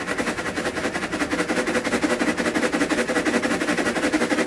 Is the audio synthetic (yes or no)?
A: no